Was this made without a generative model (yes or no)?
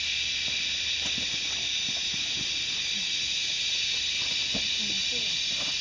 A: yes